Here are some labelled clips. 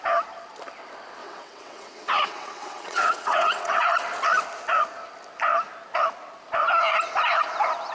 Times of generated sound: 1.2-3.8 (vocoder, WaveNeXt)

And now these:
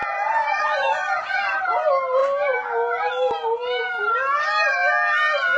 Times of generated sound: 0.0-1.2 (vocoder, BigVGAN v2)

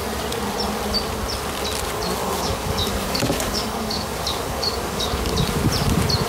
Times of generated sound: 2.2-5.4 (codec, DAC)

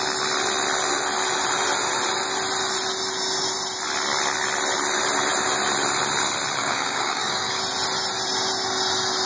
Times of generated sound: 6.6-7.6 (codec, DAC)

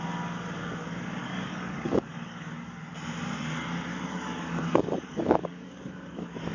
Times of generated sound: 1.2-2.9 (codec, DAC); 3.9-6.5

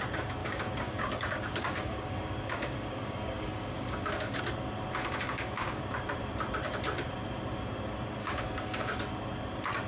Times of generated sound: 0.4-4.4 (codec, DAC); 5.0-5.8; 8.2-9.0

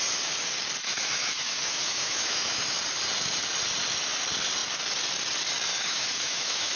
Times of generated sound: 0.8-2.8 (autoencoder, DAC-VAE); 5.7-6.8

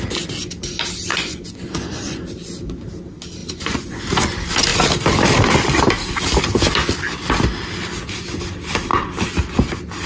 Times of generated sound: 1.1-2.9 (vocoder, Vocos); 3.4-4.0